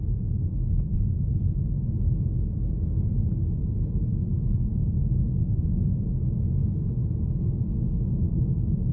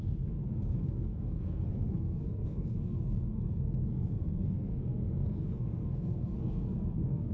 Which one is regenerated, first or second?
second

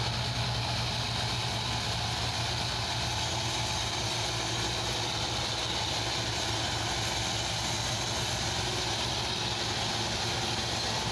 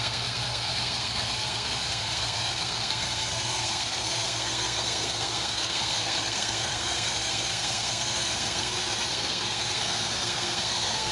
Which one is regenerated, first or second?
second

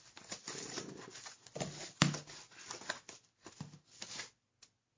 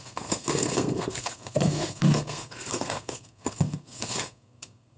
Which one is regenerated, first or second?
second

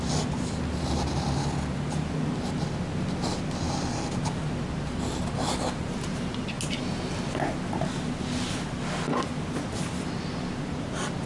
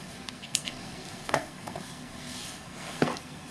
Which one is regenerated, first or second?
second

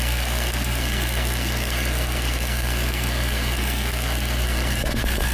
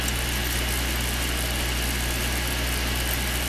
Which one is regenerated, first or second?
first